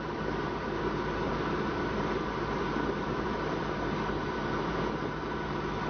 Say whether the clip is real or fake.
fake